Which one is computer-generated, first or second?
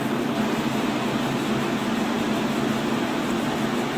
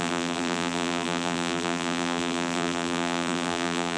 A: second